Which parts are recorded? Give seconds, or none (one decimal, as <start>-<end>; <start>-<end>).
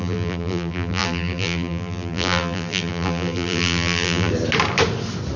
4.3-5.4